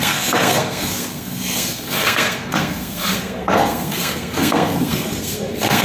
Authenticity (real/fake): fake